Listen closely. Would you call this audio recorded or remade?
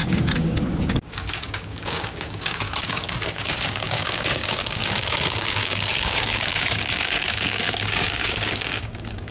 remade